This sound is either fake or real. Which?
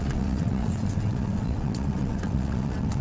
fake